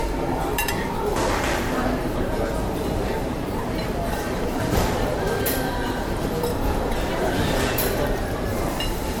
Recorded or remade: remade